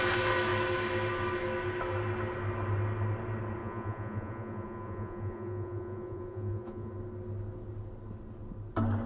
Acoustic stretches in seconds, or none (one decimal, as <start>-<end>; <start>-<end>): 0.0-3.6; 7.0-9.1

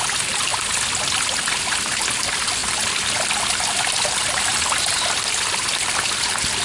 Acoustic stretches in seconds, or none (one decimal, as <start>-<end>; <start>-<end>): 0.0-6.6